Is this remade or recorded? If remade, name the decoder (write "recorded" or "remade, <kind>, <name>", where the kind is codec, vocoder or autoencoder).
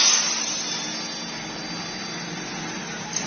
recorded